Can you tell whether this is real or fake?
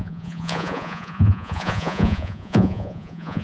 fake